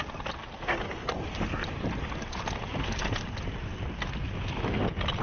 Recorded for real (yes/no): yes